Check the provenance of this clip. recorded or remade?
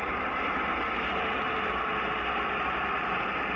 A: recorded